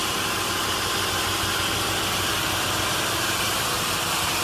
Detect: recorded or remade remade